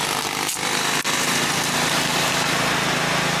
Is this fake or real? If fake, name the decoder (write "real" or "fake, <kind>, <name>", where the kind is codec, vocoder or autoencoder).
real